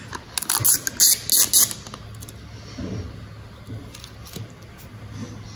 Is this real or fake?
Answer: real